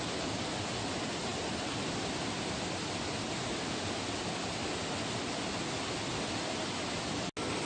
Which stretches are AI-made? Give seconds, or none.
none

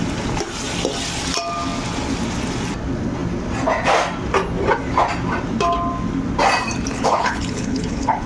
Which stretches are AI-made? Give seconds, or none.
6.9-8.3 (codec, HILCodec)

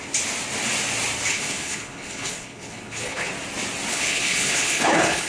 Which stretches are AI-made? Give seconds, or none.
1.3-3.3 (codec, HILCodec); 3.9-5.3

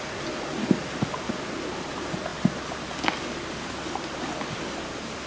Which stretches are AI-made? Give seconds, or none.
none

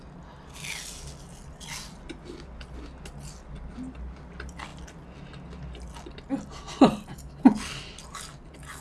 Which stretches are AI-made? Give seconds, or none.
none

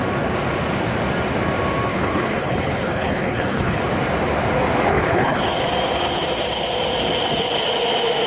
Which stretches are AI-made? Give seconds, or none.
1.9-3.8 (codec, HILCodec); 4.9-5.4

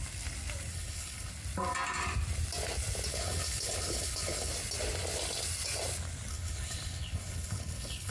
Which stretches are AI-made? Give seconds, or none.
0.7-1.3 (codec, HILCodec); 3.1-4.5; 6.3-8.1